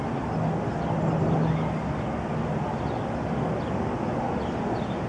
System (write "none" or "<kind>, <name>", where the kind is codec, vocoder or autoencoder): none